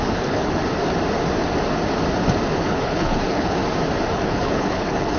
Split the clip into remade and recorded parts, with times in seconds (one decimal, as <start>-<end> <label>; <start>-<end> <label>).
0.0-0.6 remade; 0.6-2.6 recorded; 2.6-3.6 remade; 3.6-4.1 recorded; 4.1-5.2 remade